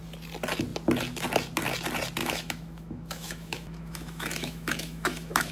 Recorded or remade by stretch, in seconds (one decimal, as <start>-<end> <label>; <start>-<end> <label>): 0.0-2.2 recorded; 2.2-5.5 remade